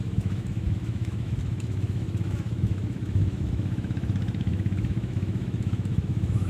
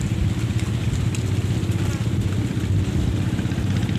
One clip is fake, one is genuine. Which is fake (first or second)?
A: first